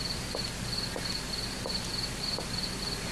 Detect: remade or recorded recorded